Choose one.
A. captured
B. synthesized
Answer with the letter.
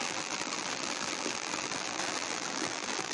B